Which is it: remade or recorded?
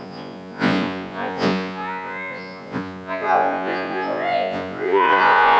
remade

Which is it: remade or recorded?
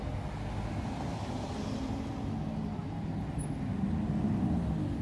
recorded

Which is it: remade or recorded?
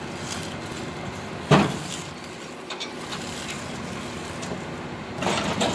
recorded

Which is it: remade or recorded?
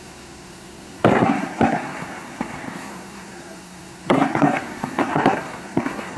remade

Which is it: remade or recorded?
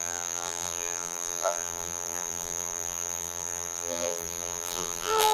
remade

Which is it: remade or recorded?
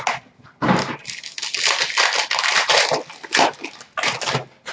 recorded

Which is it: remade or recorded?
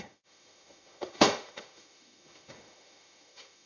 remade